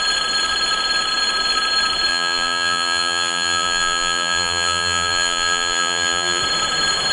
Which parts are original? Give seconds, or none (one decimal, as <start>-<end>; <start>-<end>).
0.0-2.1; 6.4-7.1